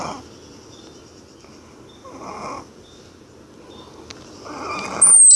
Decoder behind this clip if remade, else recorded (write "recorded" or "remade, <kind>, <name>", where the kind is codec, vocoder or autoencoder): recorded